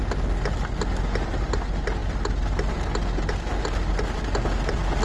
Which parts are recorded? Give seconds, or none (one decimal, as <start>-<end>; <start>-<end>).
0.0-5.0